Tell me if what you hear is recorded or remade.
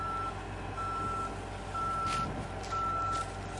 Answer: recorded